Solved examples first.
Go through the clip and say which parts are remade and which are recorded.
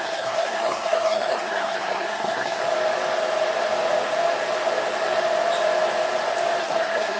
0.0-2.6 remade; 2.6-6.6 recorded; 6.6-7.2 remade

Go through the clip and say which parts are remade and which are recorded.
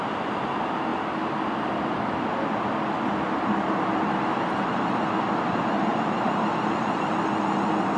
0.0-8.0 recorded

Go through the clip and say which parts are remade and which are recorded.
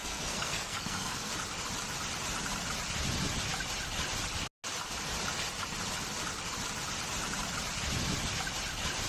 0.0-1.3 remade; 1.3-9.1 recorded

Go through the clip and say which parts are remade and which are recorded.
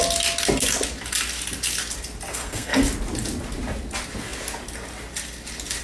0.0-2.3 recorded; 2.3-2.8 remade; 2.8-5.8 recorded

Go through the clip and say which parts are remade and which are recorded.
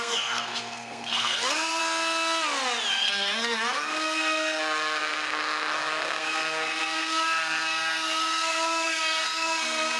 0.0-1.8 remade; 1.8-2.9 recorded; 2.9-10.0 remade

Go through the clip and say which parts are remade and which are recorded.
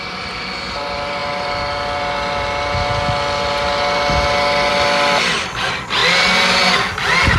0.0-7.4 recorded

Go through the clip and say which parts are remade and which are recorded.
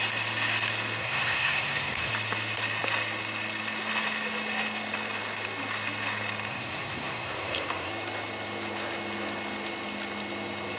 0.0-1.0 recorded; 1.0-2.1 remade; 2.1-6.5 recorded; 6.5-7.9 remade; 7.9-10.8 recorded